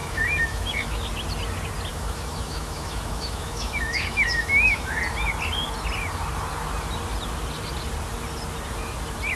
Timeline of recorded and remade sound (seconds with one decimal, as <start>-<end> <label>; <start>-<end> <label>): 0.0-1.0 remade; 1.0-1.9 recorded; 1.9-5.0 remade; 5.0-9.4 recorded